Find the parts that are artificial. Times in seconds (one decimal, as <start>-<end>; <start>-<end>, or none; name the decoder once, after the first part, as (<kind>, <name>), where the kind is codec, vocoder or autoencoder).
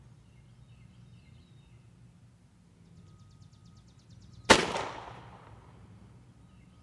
none